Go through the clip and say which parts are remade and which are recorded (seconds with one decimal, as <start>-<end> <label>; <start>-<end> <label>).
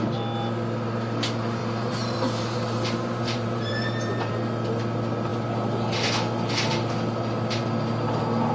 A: 0.0-1.6 recorded; 1.6-4.3 remade; 4.3-8.5 recorded